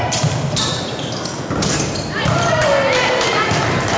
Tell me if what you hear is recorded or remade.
recorded